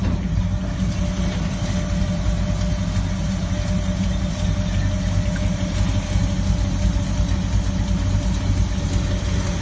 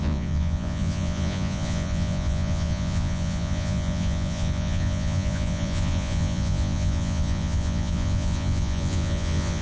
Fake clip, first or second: second